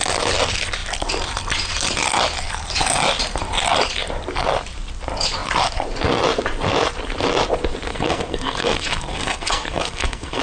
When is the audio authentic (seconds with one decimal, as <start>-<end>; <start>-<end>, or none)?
0.0-7.9

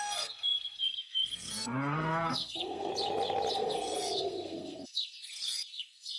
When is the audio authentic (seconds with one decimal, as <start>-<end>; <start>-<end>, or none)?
2.9-3.5

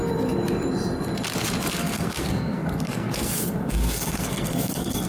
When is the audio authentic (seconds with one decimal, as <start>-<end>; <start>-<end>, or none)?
0.0-1.7

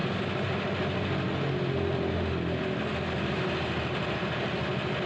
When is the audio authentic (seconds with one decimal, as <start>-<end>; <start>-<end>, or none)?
0.0-5.1

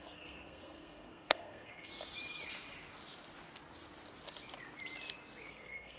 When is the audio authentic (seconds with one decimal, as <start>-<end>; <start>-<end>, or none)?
1.9-5.5